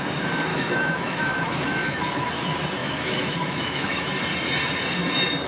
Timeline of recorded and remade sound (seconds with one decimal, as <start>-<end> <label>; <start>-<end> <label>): 0.0-0.5 recorded; 0.5-2.3 remade; 2.3-2.8 recorded; 2.8-4.1 remade; 4.1-5.5 recorded